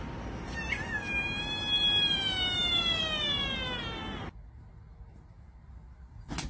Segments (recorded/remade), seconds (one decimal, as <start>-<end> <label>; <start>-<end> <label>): 0.0-6.5 recorded